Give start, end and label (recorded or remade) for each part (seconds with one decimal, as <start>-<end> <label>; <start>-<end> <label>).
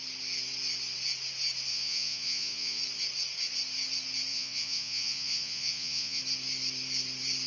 0.0-1.7 recorded; 1.7-2.8 remade; 2.8-4.3 recorded; 4.3-6.2 remade; 6.2-7.5 recorded